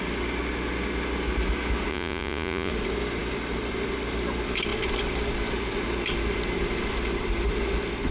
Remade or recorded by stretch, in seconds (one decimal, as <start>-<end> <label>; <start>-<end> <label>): 0.0-1.9 recorded; 1.9-2.7 remade; 2.7-8.1 recorded